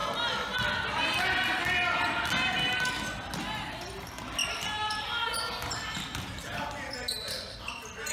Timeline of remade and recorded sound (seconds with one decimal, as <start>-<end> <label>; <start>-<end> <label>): 0.0-8.1 recorded